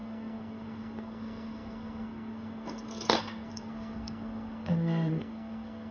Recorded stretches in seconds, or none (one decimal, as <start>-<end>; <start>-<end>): none